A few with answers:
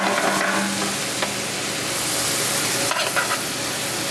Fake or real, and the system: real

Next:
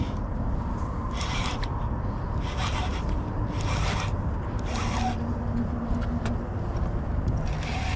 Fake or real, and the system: real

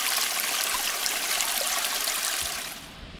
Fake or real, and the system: real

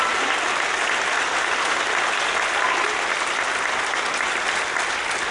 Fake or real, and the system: real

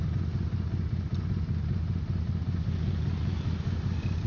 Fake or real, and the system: real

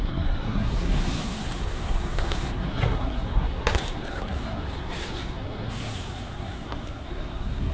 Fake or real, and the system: fake, codec, SNAC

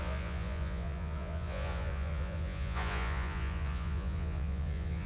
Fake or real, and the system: fake, vocoder, Vocos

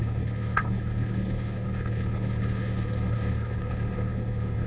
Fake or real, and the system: fake, codec, HILCodec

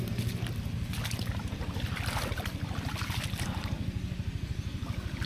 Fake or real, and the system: real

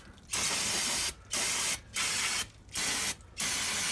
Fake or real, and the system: real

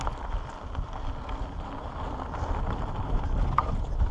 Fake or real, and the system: real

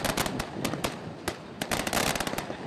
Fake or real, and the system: real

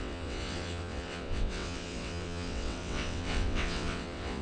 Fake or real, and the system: fake, vocoder, WaveNeXt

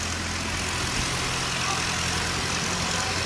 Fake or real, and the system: real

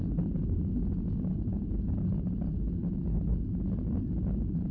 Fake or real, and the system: real